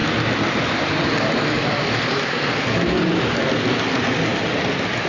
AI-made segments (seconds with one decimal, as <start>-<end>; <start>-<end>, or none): none

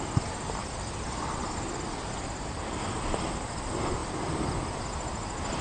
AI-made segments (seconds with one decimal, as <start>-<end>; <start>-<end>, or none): none

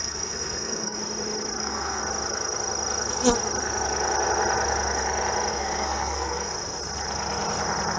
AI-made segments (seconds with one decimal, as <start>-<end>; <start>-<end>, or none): 0.0-1.0; 1.6-2.0; 5.5-6.5

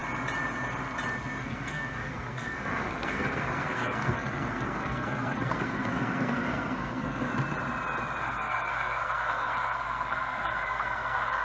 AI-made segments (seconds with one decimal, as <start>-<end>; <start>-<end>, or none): 1.4-7.3; 8.2-11.4

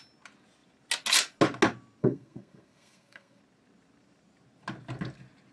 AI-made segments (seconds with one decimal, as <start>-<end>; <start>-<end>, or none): 2.0-3.4

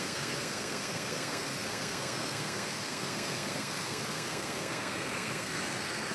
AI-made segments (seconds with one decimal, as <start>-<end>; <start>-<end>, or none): 0.0-6.1

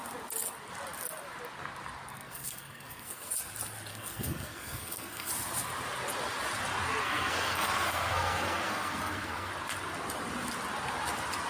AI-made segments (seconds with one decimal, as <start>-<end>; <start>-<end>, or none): 2.1-3.3; 3.9-5.3; 7.0-9.5

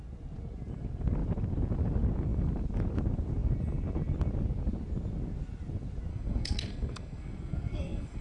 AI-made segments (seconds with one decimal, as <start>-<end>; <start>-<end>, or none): 6.1-8.2